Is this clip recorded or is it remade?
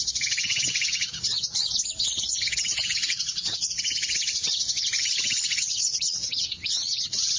remade